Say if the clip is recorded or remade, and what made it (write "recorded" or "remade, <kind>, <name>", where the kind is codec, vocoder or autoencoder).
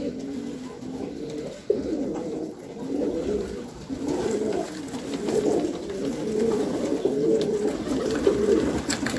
recorded